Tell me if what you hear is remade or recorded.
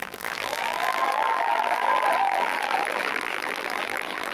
remade